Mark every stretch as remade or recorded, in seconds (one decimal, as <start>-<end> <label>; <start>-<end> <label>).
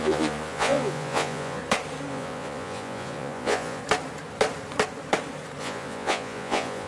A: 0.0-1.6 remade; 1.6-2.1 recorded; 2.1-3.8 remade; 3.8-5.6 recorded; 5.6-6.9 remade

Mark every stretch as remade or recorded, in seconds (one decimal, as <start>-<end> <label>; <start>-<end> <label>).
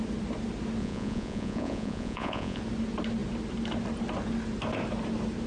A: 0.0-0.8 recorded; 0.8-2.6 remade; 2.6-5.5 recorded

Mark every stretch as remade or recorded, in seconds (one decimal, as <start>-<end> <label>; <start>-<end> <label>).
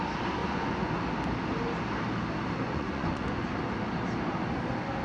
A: 0.0-0.4 recorded; 0.4-0.9 remade; 0.9-2.6 recorded; 2.6-3.5 remade; 3.5-5.0 recorded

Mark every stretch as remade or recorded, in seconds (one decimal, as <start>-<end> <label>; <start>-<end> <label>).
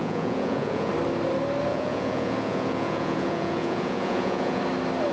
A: 0.0-0.9 remade; 0.9-1.7 recorded; 1.7-4.6 remade; 4.6-5.1 recorded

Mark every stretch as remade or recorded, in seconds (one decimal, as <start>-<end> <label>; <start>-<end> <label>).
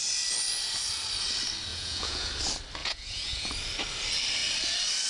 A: 0.0-1.7 recorded; 1.7-2.3 remade; 2.3-2.8 recorded; 2.8-3.5 remade; 3.5-5.1 recorded